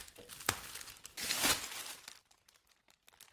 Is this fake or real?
real